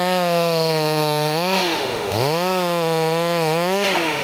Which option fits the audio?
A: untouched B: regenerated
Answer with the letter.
B